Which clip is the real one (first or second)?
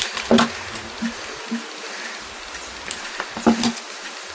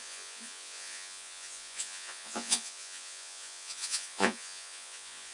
first